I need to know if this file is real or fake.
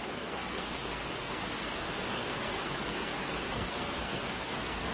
fake